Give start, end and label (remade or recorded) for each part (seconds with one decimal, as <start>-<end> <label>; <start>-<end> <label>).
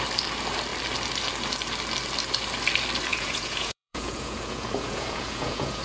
0.0-3.1 recorded; 3.1-5.8 remade